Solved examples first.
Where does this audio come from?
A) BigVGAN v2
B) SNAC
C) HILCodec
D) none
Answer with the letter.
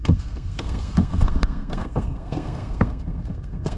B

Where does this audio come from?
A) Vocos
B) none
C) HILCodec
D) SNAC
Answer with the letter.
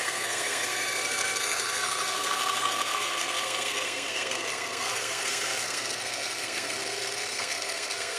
D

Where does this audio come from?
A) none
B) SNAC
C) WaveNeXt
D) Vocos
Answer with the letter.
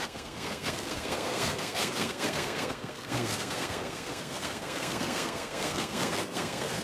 B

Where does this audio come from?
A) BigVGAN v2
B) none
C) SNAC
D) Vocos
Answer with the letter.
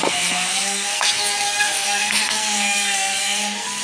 C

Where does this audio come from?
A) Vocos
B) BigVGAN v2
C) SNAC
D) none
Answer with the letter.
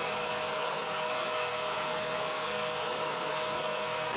C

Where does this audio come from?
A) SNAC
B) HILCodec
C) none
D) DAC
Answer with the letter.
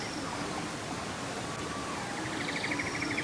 C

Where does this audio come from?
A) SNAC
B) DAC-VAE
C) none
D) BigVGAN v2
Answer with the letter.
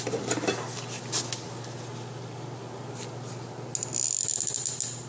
C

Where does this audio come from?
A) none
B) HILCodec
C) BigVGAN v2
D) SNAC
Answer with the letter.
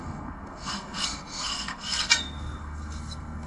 D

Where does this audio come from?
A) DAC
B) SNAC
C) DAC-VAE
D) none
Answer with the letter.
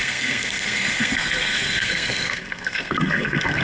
B